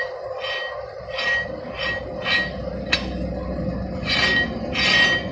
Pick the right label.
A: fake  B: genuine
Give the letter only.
B